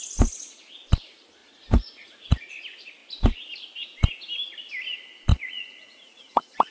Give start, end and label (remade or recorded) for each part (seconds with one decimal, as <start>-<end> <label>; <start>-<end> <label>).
0.0-1.4 recorded; 1.4-2.5 remade; 2.5-5.3 recorded; 5.3-6.7 remade